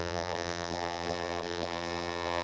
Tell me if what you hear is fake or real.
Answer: fake